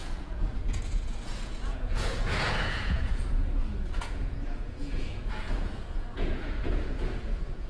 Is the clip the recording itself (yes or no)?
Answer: no